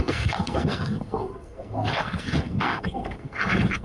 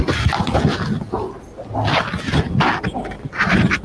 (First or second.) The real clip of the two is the second